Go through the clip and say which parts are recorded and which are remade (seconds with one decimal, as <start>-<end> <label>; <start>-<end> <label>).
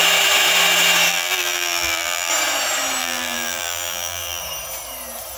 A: 0.0-1.1 recorded; 1.1-2.3 remade; 2.3-3.0 recorded; 3.0-4.4 remade; 4.4-5.4 recorded